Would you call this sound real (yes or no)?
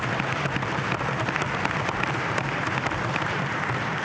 no